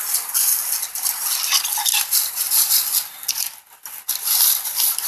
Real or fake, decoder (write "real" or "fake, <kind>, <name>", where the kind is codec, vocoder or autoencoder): real